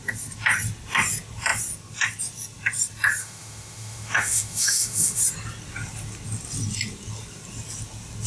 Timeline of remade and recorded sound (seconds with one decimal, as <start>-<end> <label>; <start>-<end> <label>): 0.0-3.2 recorded; 3.2-5.2 remade; 5.2-8.3 recorded